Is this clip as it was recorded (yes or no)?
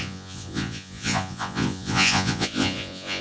no